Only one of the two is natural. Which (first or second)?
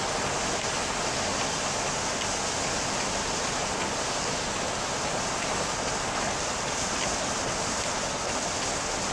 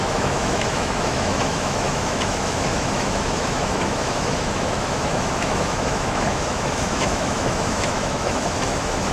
first